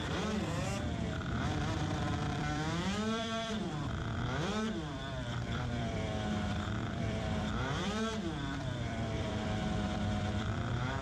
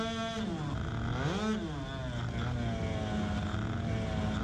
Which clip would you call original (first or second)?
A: second